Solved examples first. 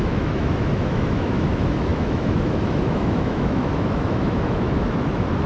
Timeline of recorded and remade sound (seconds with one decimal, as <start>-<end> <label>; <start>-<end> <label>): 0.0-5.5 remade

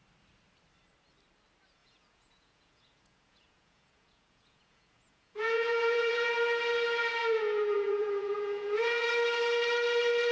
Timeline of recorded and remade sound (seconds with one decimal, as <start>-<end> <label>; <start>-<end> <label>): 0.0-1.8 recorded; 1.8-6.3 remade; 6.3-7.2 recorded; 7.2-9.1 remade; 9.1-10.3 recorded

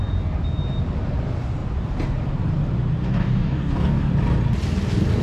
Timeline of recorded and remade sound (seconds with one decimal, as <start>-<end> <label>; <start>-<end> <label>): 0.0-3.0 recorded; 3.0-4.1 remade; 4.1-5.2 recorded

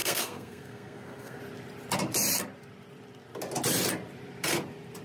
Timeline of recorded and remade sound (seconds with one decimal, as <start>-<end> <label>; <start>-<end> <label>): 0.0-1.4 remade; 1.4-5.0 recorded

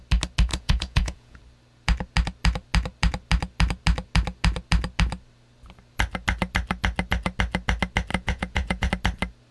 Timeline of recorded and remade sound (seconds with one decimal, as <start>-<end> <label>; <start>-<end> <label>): 0.0-0.5 recorded; 0.5-1.4 remade; 1.4-8.1 recorded; 8.1-8.9 remade; 8.9-9.5 recorded

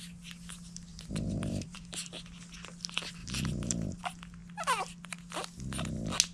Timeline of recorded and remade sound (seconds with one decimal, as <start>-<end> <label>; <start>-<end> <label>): 0.0-0.9 recorded; 0.9-1.8 remade; 1.8-3.2 recorded; 3.2-4.0 remade; 4.0-6.3 recorded

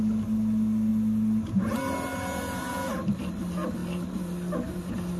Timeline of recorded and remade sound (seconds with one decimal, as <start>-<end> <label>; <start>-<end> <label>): 0.0-5.2 recorded

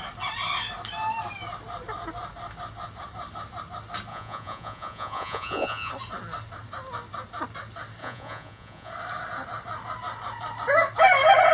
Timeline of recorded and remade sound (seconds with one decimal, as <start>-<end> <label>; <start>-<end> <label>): 0.0-4.1 recorded; 4.1-5.9 remade; 5.9-8.0 recorded; 8.0-8.9 remade; 8.9-11.5 recorded